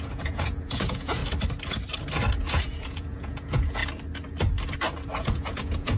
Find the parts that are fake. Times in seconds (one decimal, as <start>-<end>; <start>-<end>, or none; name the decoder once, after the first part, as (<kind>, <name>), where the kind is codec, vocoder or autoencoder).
0.0-1.2 (vocoder, Vocos); 2.4-3.8; 5.2-6.0